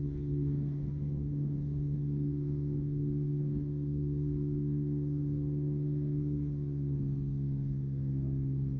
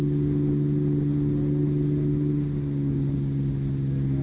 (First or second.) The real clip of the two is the second